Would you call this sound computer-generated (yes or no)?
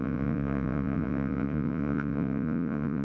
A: yes